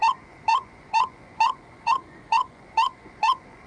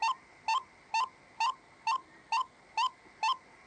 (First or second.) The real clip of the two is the second